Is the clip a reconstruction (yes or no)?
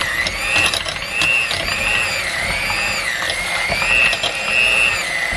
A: no